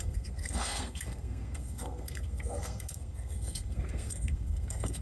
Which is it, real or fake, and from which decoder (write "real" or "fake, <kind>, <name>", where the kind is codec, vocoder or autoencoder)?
fake, codec, SNAC